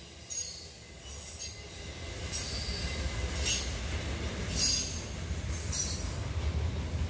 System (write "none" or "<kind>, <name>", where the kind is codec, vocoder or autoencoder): none